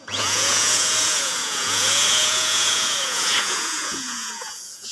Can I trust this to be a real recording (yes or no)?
no